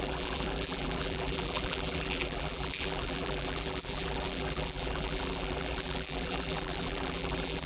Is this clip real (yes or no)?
no